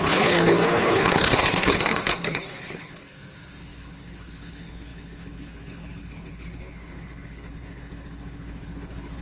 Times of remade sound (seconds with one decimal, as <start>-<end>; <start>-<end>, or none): 0.0-9.2

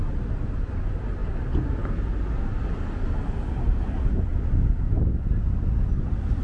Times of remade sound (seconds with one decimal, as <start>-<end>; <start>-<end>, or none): none

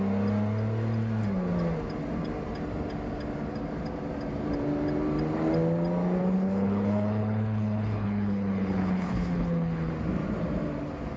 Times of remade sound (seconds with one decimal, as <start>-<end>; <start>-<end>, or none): 6.2-9.9

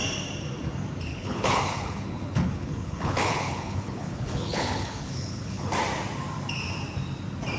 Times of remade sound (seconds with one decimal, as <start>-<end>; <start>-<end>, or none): 1.1-5.7

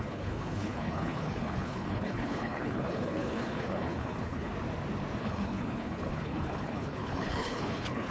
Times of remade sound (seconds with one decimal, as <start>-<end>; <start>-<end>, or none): 0.0-4.5; 5.2-8.1

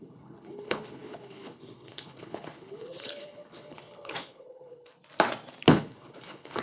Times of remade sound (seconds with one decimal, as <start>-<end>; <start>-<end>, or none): 0.0-4.9; 5.7-6.6

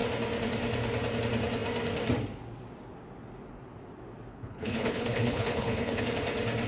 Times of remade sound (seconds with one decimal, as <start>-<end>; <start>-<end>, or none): 4.3-6.0